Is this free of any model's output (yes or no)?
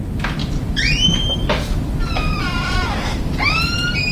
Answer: yes